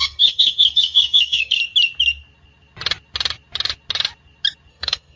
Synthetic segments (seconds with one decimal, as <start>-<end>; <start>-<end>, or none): 0.0-1.6; 4.7-5.2